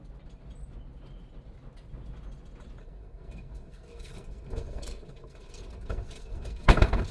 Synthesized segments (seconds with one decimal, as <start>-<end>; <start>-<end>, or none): 2.8-7.1